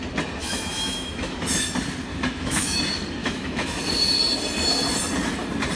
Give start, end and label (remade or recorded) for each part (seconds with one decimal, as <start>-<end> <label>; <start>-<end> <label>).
0.0-0.4 recorded; 0.4-1.4 remade; 1.4-2.1 recorded; 2.1-2.8 remade; 2.8-3.2 recorded; 3.2-3.8 remade; 3.8-5.8 recorded